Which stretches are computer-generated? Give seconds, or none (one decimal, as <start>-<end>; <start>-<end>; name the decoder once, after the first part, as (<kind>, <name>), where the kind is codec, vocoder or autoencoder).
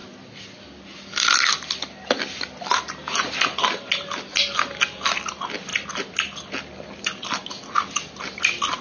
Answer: none